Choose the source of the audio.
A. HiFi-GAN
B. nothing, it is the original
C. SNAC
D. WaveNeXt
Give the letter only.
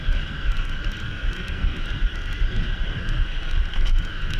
C